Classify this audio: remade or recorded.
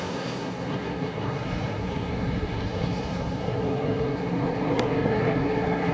remade